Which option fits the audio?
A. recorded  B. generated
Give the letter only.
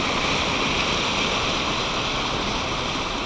A